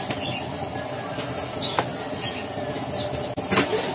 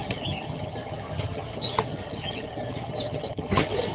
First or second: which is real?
first